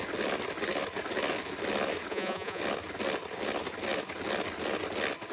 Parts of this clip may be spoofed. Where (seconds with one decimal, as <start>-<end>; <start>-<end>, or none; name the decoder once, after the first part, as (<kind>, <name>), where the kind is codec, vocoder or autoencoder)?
2.1-2.6 (vocoder, Vocos)